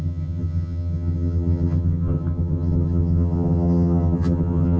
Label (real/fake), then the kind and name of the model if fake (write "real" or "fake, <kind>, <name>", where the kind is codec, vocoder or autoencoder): fake, vocoder, HiFi-GAN